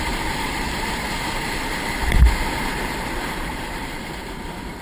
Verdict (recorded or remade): remade